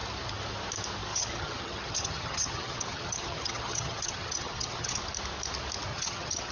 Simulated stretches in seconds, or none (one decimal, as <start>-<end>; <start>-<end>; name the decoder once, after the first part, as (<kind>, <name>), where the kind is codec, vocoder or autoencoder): 1.1-5.0 (vocoder, HiFi-GAN); 5.9-6.5